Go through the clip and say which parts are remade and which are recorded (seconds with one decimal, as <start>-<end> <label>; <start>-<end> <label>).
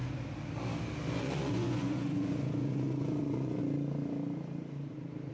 0.0-1.2 recorded; 1.2-3.6 remade; 3.6-5.3 recorded